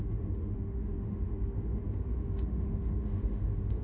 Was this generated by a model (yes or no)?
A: yes